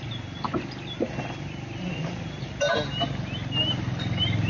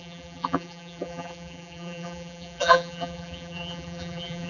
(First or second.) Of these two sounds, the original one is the first